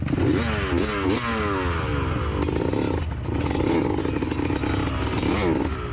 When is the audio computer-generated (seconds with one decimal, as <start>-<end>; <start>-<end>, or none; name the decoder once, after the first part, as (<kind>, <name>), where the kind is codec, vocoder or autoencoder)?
none